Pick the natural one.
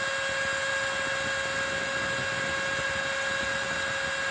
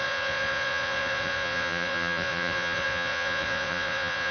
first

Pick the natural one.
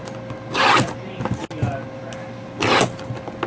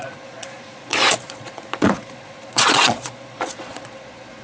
first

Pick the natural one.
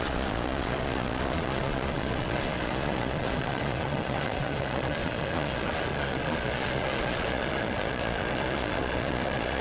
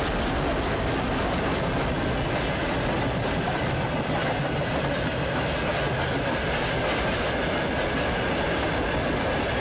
second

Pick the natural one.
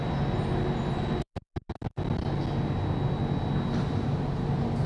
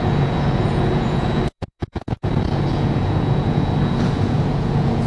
first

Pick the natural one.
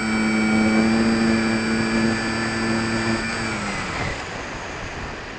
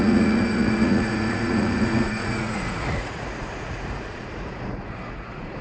first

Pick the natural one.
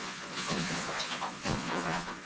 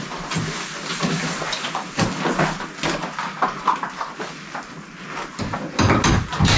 second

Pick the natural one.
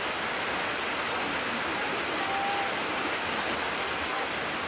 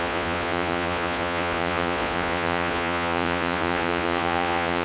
first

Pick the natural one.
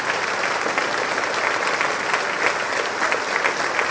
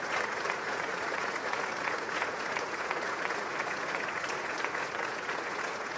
first